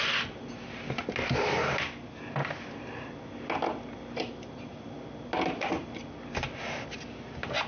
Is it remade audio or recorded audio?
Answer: recorded